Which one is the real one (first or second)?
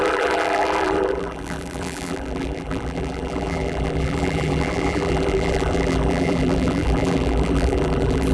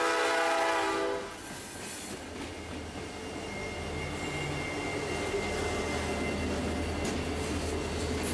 second